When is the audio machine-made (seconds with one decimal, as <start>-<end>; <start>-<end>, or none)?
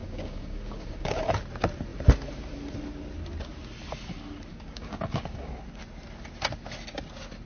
0.0-1.3; 4.5-5.6